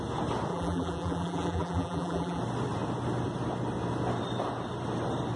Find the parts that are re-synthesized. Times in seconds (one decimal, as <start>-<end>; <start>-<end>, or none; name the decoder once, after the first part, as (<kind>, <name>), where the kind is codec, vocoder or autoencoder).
0.5-2.4 (vocoder, BigVGAN v2)